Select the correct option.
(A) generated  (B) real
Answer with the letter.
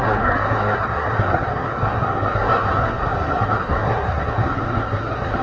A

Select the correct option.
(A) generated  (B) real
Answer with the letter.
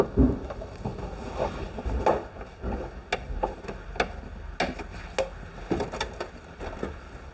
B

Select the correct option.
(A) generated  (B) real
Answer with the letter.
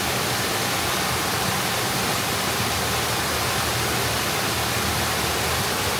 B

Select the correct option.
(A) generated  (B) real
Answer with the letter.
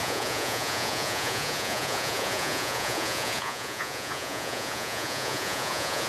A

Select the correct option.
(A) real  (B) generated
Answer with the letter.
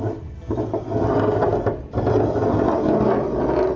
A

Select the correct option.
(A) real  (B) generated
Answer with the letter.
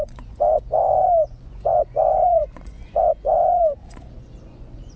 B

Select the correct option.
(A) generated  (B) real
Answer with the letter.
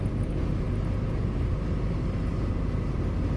B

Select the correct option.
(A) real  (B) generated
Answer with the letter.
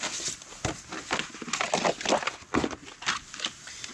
A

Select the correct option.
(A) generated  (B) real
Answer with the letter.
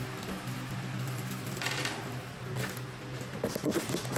B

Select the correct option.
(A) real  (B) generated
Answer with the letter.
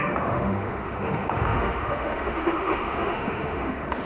B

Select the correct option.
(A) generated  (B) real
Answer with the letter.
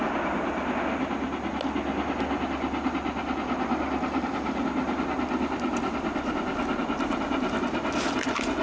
B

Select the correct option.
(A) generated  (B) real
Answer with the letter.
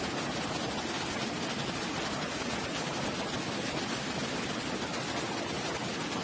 B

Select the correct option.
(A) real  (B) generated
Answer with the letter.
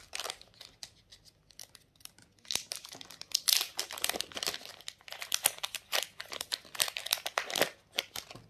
A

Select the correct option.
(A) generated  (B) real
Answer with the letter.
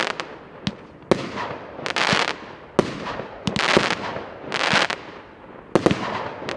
B